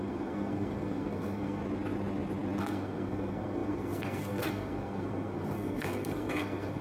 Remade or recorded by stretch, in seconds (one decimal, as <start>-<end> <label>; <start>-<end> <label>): 0.0-1.6 remade; 1.6-2.6 recorded; 2.6-6.8 remade